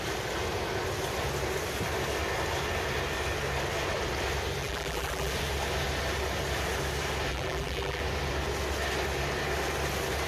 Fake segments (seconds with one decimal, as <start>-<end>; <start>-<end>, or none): 4.6-5.3; 7.3-8.0